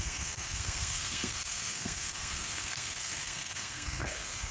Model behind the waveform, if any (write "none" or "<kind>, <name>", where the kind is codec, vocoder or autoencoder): codec, SNAC